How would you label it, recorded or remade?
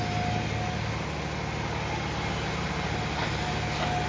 recorded